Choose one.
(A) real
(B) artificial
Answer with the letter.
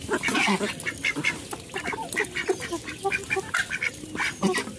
A